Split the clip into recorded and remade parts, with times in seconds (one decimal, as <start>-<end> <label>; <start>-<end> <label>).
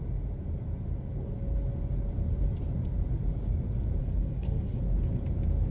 0.0-4.0 recorded; 4.0-4.8 remade; 4.8-5.7 recorded